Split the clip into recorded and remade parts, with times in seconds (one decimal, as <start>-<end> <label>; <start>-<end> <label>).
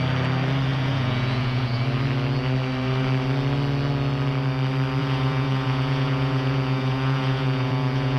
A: 0.0-0.7 recorded; 0.7-1.8 remade; 1.8-5.0 recorded; 5.0-8.2 remade